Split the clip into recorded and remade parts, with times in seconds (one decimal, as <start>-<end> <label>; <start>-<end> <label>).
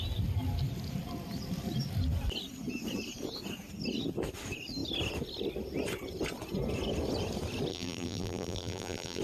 0.0-7.7 recorded; 7.7-9.2 remade